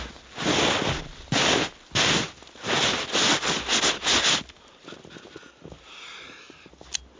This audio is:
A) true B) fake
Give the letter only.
A